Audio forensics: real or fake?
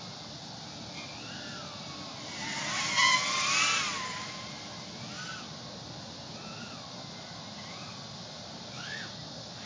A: real